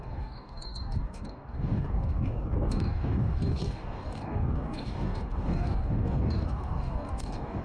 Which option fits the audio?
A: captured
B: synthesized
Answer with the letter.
B